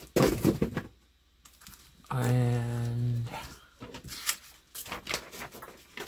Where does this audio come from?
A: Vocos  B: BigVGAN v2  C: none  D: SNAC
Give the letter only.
C